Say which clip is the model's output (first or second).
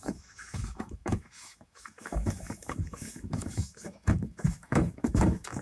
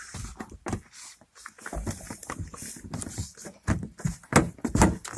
first